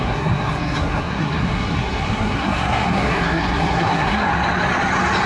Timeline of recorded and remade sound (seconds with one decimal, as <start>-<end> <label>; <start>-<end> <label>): 0.0-4.3 remade; 4.3-5.3 recorded